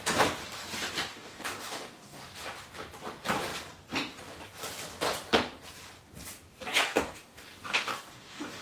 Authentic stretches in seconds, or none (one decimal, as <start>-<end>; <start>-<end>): 0.0-1.1; 2.2-6.7